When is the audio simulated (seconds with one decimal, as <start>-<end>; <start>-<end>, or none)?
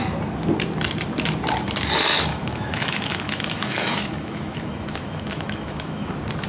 2.3-6.1